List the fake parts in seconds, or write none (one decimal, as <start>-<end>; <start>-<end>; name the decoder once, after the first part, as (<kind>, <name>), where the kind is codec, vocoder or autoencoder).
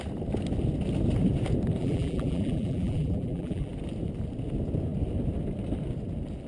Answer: 1.8-3.7 (vocoder, BigVGAN v2)